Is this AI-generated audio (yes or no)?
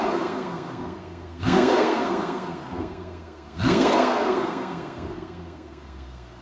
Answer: yes